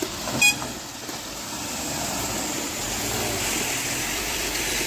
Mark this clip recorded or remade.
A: remade